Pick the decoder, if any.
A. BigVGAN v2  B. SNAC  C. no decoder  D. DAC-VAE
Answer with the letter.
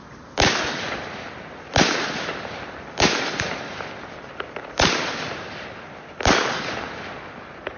A